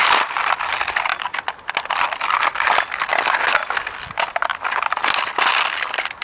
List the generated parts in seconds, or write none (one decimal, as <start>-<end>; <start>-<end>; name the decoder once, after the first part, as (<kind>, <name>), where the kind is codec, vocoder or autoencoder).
none